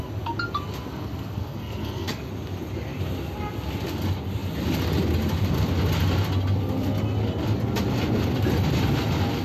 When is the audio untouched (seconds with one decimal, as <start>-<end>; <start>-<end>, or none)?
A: 0.0-0.9; 2.3-9.4